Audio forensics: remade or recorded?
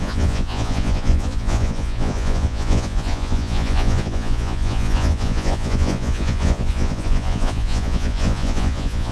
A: remade